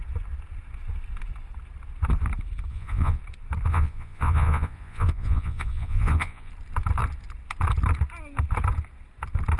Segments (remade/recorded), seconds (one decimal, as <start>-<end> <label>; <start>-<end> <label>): 0.0-2.7 recorded; 2.7-3.2 remade; 3.2-3.7 recorded; 3.7-6.5 remade; 6.5-9.6 recorded